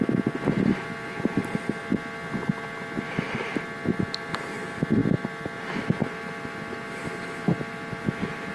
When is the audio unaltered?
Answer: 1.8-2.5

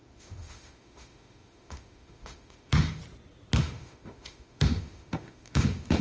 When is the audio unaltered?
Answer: 3.0-3.6

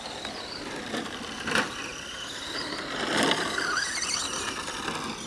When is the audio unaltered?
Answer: 0.0-5.3

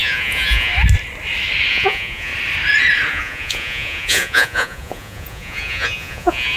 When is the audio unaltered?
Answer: 0.7-1.7; 2.3-3.1